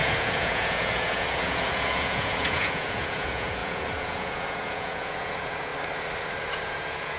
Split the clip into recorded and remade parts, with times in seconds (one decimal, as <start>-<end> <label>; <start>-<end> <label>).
0.0-5.7 remade; 5.7-6.5 recorded; 6.5-7.2 remade